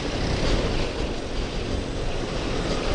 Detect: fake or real real